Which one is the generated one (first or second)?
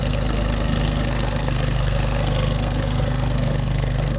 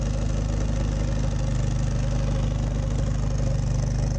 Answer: first